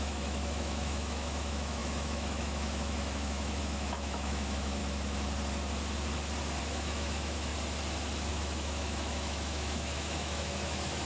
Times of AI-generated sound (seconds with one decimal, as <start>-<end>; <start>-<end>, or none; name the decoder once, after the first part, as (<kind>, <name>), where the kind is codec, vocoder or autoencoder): 0.0-4.8 (autoencoder, DAC-VAE); 6.6-7.5; 8.3-11.1